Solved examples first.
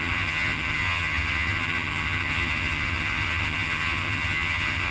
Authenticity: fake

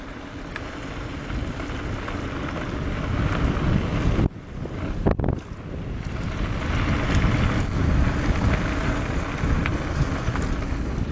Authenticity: real